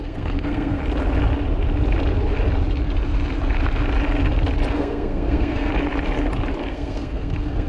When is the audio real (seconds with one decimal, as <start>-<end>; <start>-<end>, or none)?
0.8-4.7; 5.7-6.7